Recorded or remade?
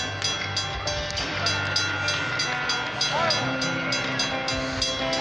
recorded